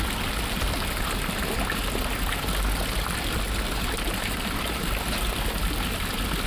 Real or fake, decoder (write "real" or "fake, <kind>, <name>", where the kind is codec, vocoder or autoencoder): real